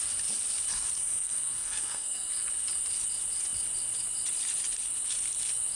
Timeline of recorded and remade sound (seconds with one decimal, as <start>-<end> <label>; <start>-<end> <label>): 0.0-1.0 recorded; 1.0-2.3 remade; 2.3-5.8 recorded